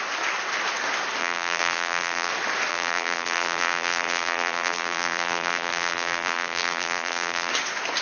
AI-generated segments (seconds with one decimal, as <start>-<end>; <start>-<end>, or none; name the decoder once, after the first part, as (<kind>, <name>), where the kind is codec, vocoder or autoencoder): 1.2-2.3 (vocoder, BigVGAN v2); 2.7-7.5